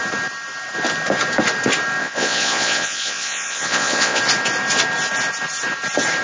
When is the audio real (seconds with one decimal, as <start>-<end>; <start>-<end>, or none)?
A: 0.0-2.0; 4.2-6.2